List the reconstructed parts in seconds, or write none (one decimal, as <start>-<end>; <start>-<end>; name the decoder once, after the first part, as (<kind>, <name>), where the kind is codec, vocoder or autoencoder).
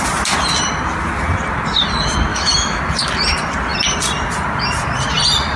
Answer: 2.3-2.8 (autoencoder, DAC-VAE)